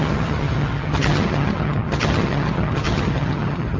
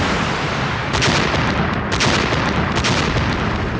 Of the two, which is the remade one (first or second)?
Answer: first